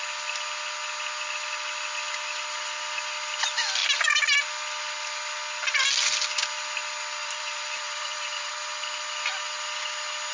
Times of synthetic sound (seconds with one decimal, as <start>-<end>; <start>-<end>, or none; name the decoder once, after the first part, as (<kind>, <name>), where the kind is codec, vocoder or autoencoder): 7.2-8.5 (vocoder, BigVGAN v2)